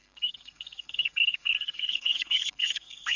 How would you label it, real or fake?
fake